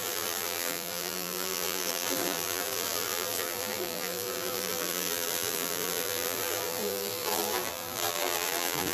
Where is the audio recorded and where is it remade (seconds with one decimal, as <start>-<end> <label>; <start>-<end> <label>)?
0.0-8.9 remade